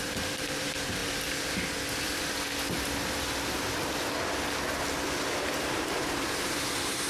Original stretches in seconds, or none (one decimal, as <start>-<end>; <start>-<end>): 1.0-5.3